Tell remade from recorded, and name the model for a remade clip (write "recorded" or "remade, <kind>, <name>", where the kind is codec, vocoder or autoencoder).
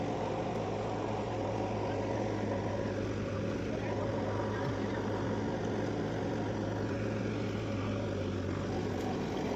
recorded